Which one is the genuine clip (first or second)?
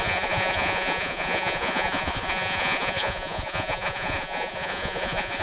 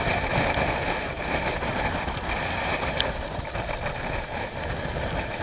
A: second